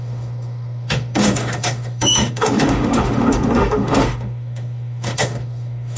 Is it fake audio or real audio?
fake